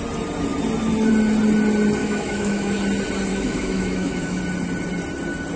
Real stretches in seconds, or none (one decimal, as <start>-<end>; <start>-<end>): 0.0-2.0; 2.8-3.3; 4.4-5.6